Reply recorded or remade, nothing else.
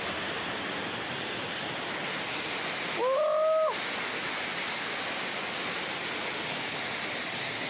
recorded